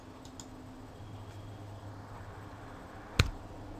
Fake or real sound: real